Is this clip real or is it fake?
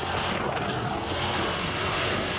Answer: real